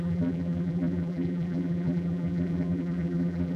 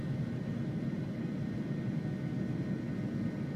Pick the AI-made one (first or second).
first